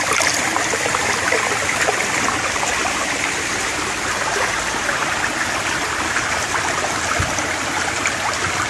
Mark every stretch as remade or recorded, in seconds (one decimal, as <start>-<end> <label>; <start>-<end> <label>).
0.0-8.7 recorded